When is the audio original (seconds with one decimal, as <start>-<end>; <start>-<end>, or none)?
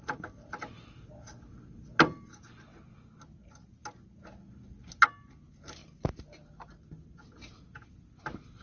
0.0-8.6